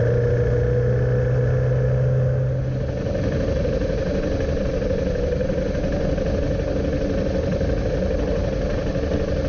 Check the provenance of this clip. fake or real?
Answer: real